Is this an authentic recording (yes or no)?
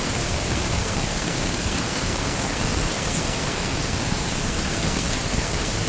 no